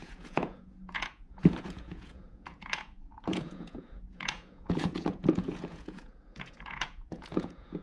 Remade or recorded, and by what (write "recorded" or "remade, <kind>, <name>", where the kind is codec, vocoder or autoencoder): remade, vocoder, Vocos